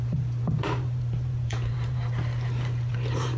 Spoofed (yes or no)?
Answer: yes